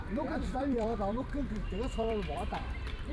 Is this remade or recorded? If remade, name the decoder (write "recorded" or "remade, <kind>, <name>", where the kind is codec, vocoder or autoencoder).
remade, vocoder, BigVGAN v2